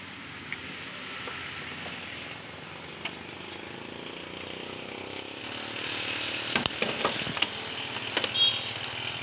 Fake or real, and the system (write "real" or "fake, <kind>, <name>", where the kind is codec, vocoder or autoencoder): real